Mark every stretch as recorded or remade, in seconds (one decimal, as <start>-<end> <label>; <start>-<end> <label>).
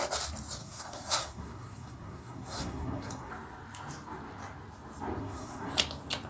0.0-0.6 recorded; 0.6-3.3 remade; 3.3-5.2 recorded; 5.2-5.7 remade; 5.7-6.3 recorded